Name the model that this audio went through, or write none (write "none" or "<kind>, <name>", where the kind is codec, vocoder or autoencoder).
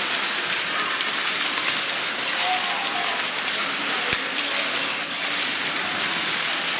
none